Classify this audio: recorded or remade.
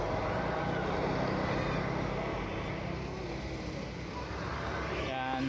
recorded